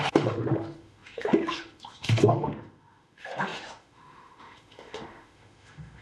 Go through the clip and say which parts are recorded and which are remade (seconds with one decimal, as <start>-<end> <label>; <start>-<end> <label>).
0.0-6.0 remade